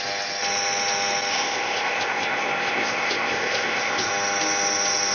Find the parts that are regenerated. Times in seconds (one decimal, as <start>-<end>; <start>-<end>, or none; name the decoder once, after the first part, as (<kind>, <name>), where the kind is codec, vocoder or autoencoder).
1.3-4.1 (codec, ZipCodec)

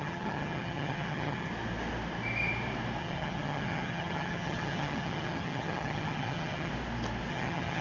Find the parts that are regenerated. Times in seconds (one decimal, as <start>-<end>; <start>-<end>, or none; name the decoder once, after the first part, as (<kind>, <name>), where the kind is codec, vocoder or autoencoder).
0.0-1.5 (vocoder, HiFi-GAN); 3.0-6.7; 7.3-7.8

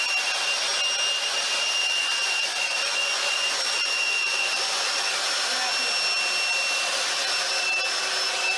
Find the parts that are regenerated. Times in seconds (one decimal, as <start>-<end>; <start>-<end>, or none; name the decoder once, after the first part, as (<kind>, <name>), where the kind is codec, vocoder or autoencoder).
1.8-5.1 (vocoder, Vocos)

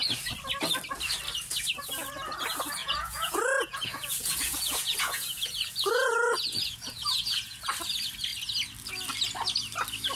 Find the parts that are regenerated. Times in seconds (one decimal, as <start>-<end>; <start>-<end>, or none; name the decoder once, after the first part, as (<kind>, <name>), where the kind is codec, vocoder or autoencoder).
2.8-7.6 (vocoder, Vocos)

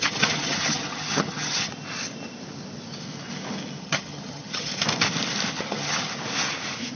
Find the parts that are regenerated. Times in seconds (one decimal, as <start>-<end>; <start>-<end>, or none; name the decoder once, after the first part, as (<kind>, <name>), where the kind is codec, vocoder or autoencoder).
0.0-1.7 (vocoder, HiFi-GAN); 3.8-4.7; 5.5-6.1

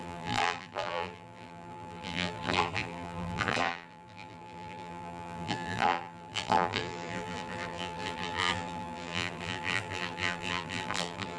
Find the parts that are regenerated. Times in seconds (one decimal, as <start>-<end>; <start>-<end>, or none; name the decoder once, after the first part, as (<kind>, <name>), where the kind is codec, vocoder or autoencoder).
0.0-11.4 (vocoder, BigVGAN v2)

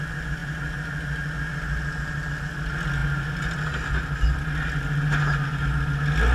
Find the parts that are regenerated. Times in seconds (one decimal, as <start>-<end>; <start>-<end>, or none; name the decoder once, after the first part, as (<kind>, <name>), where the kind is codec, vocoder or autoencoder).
none